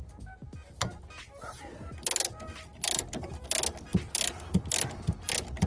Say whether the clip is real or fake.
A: real